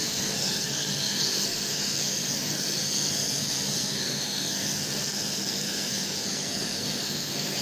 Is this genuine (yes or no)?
no